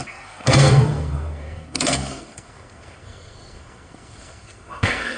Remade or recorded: remade